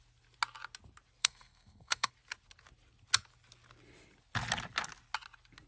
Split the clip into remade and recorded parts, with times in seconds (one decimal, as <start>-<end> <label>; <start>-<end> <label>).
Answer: 0.0-1.2 recorded; 1.2-2.1 remade; 2.1-5.7 recorded